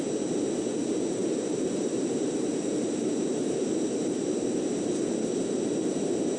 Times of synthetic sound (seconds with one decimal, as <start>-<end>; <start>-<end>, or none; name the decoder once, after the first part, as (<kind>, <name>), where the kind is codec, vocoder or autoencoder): 1.2-5.0 (vocoder, BigVGAN v2)